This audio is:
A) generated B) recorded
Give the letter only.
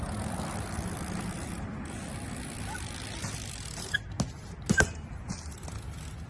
B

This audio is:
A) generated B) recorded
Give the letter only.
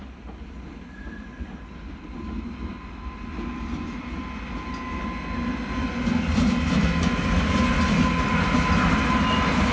B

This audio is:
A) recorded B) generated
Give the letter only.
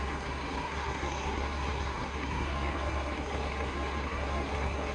B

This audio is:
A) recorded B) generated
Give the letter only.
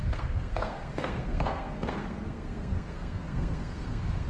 B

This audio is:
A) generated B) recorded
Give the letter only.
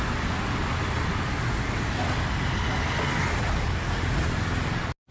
B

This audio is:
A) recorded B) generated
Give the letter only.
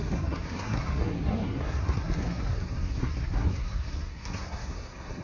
B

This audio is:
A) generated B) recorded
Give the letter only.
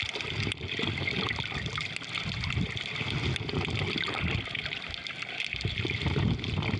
B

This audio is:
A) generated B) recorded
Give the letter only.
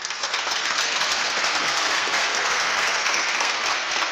A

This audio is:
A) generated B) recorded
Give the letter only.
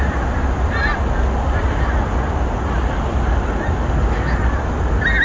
B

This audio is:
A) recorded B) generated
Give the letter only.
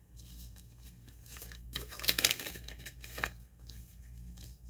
B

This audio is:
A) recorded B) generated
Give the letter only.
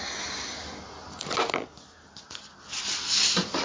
A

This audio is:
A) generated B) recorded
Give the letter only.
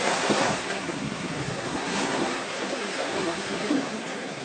A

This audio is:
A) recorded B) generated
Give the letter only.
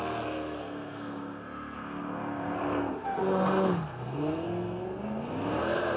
B